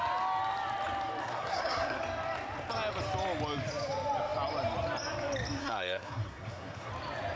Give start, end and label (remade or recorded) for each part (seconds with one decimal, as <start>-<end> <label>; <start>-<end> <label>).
0.0-1.2 recorded; 1.2-2.0 remade; 2.0-5.6 recorded; 5.6-6.9 remade; 6.9-7.4 recorded